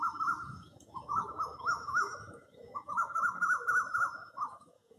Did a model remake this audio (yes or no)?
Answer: yes